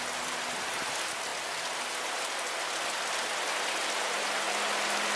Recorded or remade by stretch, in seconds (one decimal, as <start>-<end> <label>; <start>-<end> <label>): 0.0-5.2 recorded